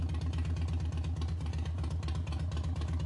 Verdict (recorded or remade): recorded